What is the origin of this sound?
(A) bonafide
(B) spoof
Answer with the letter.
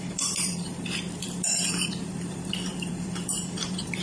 B